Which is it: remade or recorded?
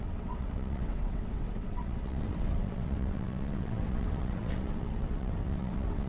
remade